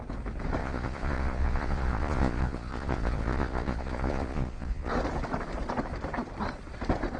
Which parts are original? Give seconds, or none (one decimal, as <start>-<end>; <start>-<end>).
0.0-0.6; 4.9-7.2